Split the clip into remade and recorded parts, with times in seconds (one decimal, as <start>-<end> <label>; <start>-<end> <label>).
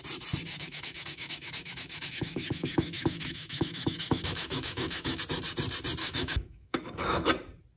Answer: 0.0-0.5 recorded; 0.5-5.2 remade; 5.2-6.0 recorded; 6.0-7.3 remade; 7.3-7.8 recorded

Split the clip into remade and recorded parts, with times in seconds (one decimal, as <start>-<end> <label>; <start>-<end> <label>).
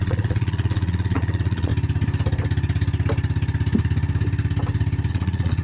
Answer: 0.0-1.7 remade; 1.7-5.1 recorded; 5.1-5.6 remade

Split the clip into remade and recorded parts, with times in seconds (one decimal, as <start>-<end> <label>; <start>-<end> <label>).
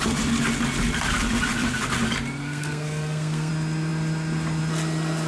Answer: 0.0-2.4 recorded; 2.4-3.5 remade; 3.5-5.3 recorded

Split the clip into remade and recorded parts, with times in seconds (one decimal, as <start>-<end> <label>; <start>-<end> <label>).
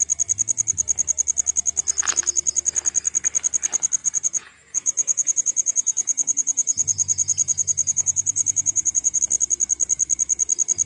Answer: 0.0-4.0 recorded; 4.0-9.2 remade; 9.2-10.9 recorded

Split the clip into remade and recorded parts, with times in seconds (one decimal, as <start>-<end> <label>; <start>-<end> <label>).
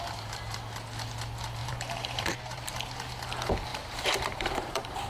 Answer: 0.0-1.6 recorded; 1.6-2.3 remade; 2.3-3.7 recorded; 3.7-5.1 remade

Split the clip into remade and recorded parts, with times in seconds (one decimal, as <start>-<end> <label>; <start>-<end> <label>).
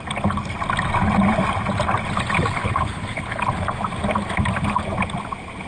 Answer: 0.0-2.6 recorded; 2.6-3.4 remade; 3.4-5.7 recorded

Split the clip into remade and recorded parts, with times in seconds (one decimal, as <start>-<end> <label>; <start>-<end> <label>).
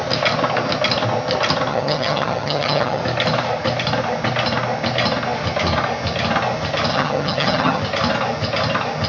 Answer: 0.0-1.7 recorded; 1.7-3.0 remade; 3.0-6.9 recorded; 6.9-7.8 remade; 7.8-9.1 recorded